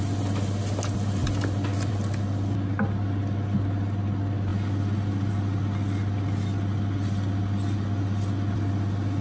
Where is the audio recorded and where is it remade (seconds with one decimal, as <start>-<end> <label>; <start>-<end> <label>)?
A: 0.0-9.2 recorded